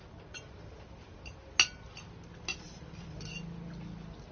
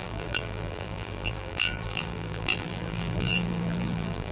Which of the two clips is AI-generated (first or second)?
second